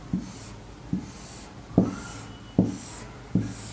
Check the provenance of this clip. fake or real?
real